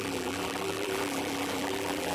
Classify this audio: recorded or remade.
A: remade